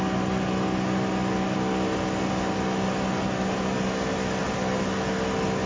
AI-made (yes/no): no